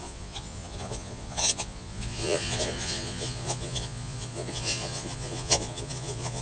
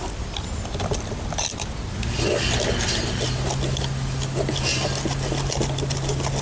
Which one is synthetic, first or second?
first